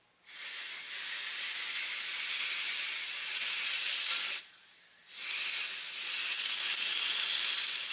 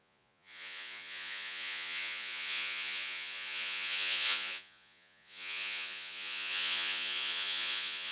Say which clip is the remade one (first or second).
second